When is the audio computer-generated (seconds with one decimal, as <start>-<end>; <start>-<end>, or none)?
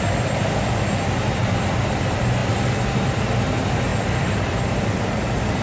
2.4-3.1; 3.9-4.7